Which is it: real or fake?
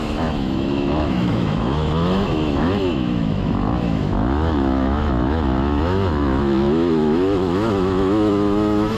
fake